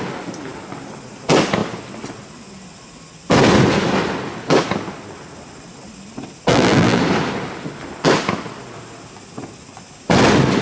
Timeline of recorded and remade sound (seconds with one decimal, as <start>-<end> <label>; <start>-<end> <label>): 0.0-6.5 recorded; 6.5-7.0 remade; 7.0-10.6 recorded